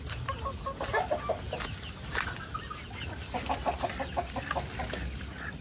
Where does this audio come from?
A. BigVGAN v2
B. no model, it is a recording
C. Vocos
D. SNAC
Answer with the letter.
B